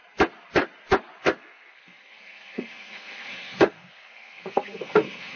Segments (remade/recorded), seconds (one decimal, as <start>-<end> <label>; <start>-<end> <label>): 0.0-1.2 recorded; 1.2-5.4 remade